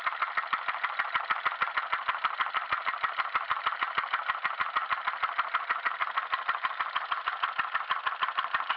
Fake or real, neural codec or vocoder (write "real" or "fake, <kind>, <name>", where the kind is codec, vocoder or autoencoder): real